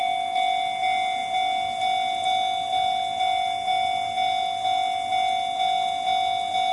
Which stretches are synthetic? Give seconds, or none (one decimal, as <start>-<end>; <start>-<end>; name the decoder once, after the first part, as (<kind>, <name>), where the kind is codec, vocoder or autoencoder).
none